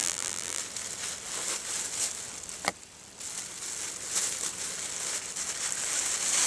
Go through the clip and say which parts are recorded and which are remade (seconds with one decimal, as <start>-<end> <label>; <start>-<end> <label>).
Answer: 0.0-0.6 remade; 0.6-6.5 recorded